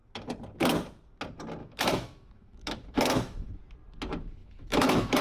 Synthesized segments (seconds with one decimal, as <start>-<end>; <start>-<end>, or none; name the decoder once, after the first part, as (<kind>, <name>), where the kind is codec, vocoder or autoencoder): 1.6-3.6 (autoencoder, DAC-VAE); 4.4-5.2